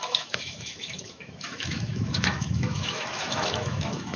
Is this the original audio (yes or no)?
no